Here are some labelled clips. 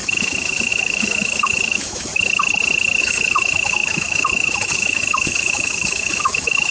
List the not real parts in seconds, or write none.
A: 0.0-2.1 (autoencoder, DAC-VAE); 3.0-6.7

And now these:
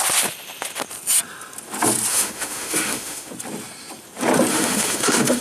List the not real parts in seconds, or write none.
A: 2.1-3.3 (autoencoder, DAC-VAE); 4.5-5.4

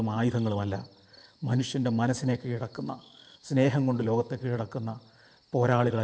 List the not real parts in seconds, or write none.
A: 1.2-4.4 (autoencoder, DAC-VAE)

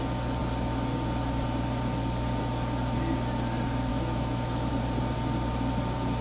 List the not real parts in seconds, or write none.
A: 3.9-4.7 (autoencoder, DAC-VAE)

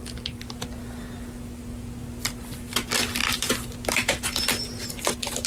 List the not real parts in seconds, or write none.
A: none

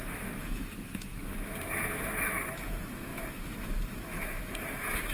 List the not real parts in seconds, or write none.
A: 0.0-5.1 (autoencoder, DAC-VAE)

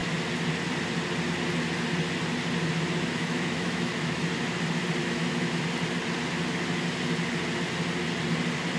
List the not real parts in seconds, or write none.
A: 3.1-4.2 (autoencoder, DAC-VAE); 5.0-5.6

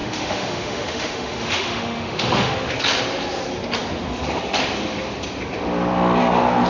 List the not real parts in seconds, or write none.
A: 0.0-2.7 (autoencoder, DAC-VAE)